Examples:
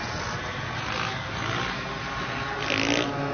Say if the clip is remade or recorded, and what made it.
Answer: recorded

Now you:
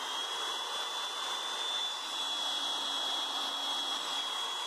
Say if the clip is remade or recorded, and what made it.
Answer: recorded